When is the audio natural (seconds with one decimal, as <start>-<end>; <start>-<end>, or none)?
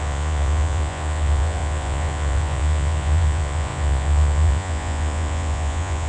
none